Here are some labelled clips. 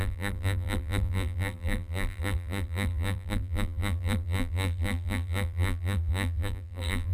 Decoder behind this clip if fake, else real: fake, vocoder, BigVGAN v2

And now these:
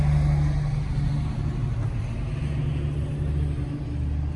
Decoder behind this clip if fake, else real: real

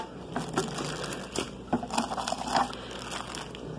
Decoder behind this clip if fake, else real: real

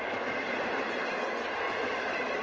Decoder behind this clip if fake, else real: fake, vocoder, BigVGAN v2